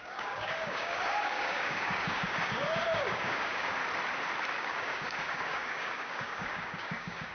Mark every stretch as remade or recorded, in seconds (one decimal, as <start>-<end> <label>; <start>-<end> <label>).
0.0-3.8 remade; 3.8-4.5 recorded; 4.5-7.3 remade